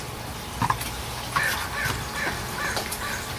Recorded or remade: recorded